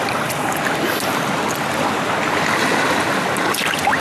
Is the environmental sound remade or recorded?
recorded